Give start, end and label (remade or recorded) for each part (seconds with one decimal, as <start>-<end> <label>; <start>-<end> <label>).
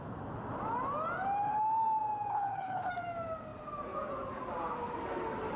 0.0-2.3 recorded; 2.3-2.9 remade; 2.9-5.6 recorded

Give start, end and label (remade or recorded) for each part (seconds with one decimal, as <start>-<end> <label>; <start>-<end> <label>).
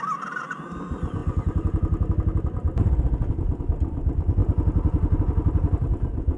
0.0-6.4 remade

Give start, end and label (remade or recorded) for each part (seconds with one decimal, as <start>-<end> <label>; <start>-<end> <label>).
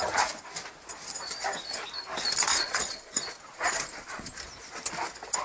0.0-2.5 recorded; 2.5-4.4 remade; 4.4-5.4 recorded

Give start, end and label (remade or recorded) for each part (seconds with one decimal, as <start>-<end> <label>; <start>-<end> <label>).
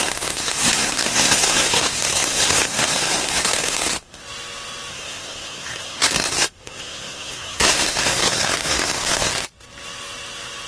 0.0-4.2 remade; 4.2-4.9 recorded; 4.9-9.3 remade; 9.3-10.7 recorded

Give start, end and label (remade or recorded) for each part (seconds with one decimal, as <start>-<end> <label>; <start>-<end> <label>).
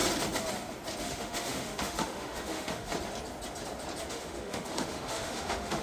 0.0-1.0 recorded; 1.0-2.9 remade; 2.9-4.1 recorded; 4.1-5.8 remade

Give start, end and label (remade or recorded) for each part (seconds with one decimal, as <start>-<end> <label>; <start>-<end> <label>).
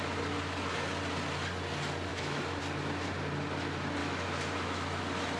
0.0-2.1 recorded; 2.1-2.6 remade; 2.6-4.0 recorded; 4.0-5.0 remade; 5.0-5.4 recorded